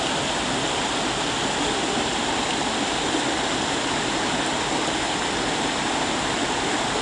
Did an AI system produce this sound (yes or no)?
no